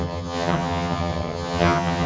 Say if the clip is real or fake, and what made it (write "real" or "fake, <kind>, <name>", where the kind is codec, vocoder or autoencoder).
fake, vocoder, HiFi-GAN